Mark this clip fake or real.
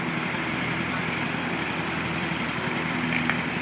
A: fake